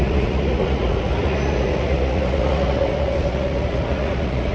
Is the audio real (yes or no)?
no